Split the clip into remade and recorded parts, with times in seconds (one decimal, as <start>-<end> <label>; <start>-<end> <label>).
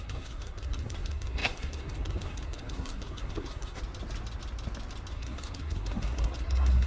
0.0-3.8 remade; 3.8-5.1 recorded; 5.1-6.9 remade